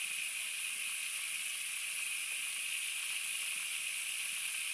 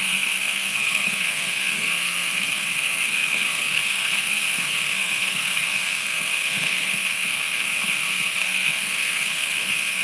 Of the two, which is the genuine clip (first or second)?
first